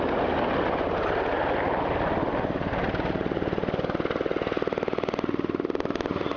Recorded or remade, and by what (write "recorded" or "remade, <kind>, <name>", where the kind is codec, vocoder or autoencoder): recorded